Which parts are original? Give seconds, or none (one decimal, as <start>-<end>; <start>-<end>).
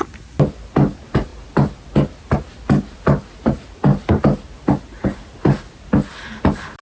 0.0-6.8